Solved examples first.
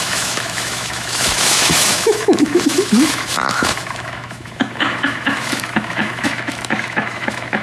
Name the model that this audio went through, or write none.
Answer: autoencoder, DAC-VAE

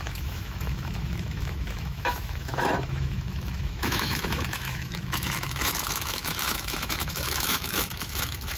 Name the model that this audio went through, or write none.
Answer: autoencoder, DAC-VAE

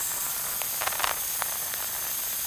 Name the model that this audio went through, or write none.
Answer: none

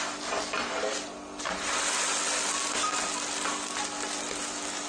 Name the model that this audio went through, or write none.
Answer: none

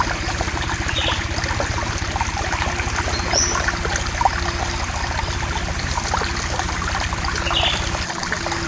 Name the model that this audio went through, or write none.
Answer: none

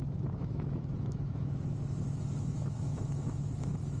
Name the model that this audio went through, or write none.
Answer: autoencoder, DAC-VAE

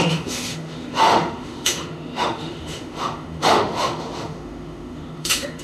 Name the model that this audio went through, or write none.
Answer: autoencoder, DAC-VAE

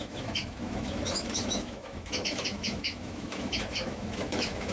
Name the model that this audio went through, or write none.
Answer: autoencoder, DAC-VAE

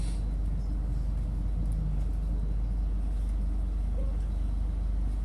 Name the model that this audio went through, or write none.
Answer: none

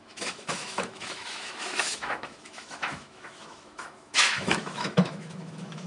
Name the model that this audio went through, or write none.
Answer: autoencoder, DAC-VAE